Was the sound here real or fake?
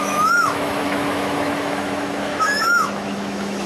fake